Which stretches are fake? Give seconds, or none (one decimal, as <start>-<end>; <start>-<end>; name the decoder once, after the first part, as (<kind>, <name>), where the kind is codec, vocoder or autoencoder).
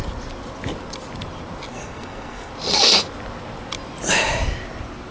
1.7-2.5 (codec, SNAC)